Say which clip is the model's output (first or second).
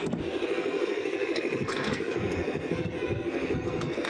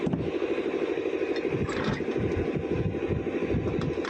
first